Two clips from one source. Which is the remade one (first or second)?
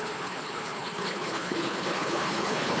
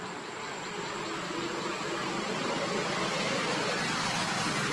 first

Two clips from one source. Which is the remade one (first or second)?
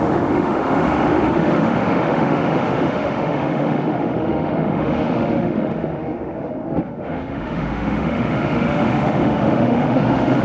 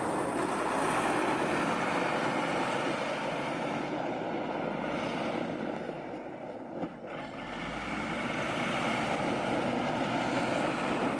first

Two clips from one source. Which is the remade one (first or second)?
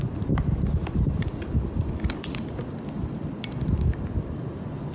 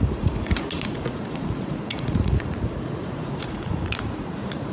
second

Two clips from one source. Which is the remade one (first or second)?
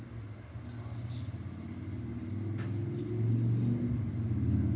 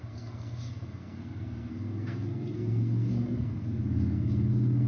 second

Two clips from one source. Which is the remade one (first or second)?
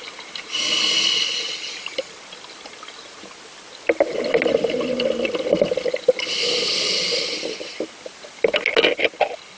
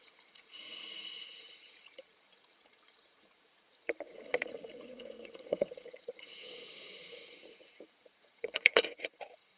second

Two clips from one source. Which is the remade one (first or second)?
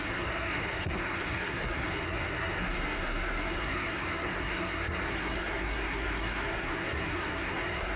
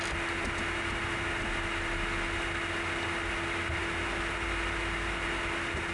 first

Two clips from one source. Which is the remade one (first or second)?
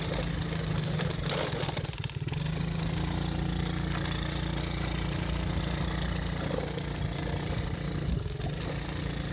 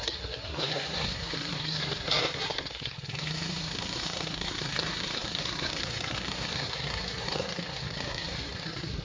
second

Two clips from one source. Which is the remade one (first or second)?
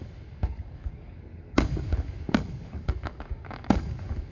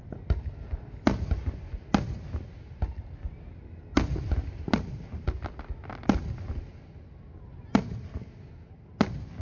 first